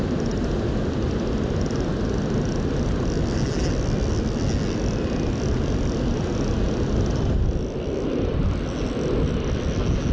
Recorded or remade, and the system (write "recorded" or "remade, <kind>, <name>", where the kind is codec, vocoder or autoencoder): recorded